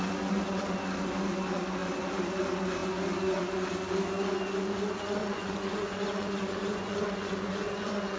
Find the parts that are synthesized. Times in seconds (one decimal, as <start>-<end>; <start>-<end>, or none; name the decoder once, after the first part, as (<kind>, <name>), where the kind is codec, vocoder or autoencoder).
5.2-8.2 (vocoder, Vocos)